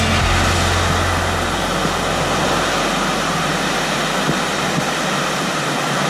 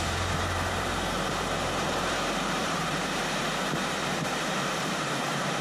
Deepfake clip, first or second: second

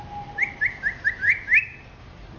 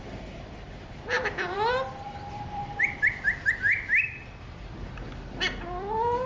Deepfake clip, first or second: second